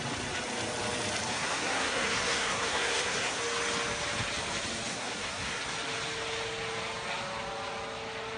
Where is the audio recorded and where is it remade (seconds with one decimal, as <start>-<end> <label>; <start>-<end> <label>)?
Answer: 0.0-1.3 recorded; 1.3-3.4 remade; 3.4-4.9 recorded; 4.9-5.6 remade; 5.6-8.4 recorded